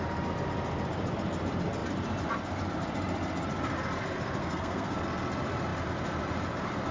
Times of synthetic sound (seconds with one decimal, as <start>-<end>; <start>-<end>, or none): 4.4-5.0